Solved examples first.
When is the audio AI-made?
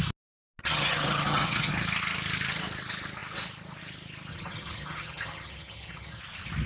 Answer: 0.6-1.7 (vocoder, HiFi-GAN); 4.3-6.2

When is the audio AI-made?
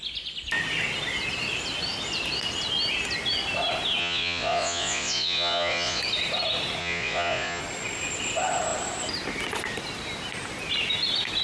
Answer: 4.0-6.0 (vocoder, Vocos); 6.8-7.6